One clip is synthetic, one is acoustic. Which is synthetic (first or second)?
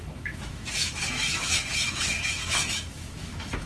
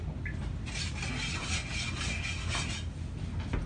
first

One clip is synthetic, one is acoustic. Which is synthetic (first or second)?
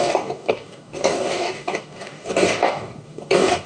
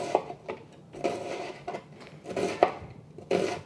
first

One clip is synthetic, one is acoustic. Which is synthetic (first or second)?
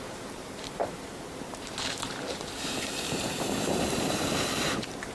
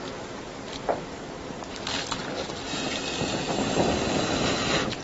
first